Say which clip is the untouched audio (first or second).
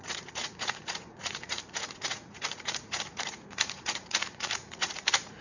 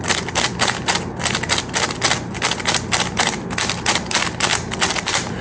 second